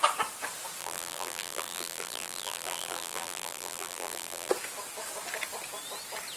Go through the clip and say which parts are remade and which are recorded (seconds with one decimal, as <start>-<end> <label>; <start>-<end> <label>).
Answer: 0.0-0.8 recorded; 0.8-4.5 remade; 4.5-6.4 recorded